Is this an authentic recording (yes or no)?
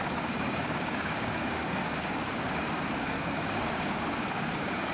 no